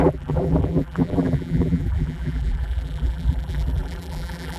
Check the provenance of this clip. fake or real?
fake